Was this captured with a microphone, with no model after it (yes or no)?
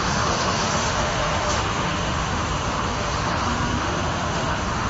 no